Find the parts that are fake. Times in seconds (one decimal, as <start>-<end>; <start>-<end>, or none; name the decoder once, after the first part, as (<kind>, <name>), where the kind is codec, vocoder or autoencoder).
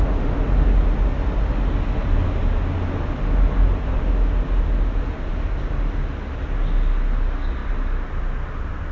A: none